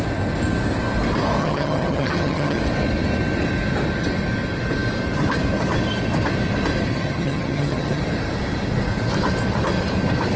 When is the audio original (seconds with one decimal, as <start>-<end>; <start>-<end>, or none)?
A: 0.0-1.4; 2.6-6.9; 8.0-10.4